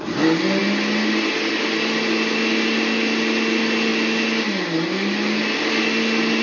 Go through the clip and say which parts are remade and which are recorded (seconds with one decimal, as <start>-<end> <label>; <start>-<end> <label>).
0.0-6.4 recorded